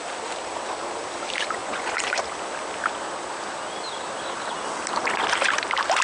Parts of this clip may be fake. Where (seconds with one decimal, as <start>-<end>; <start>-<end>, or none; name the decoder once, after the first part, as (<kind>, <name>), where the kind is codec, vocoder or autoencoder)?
1.6-2.2 (vocoder, Vocos)